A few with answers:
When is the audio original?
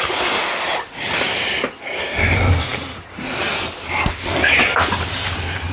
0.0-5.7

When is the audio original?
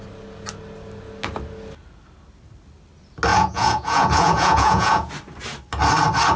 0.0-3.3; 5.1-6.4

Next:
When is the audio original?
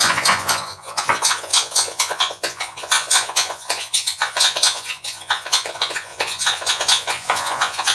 none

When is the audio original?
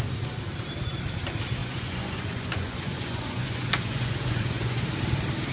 0.0-1.6; 4.8-5.5